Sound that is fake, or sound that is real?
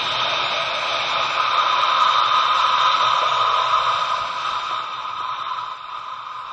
real